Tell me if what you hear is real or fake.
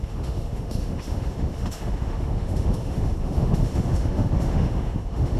fake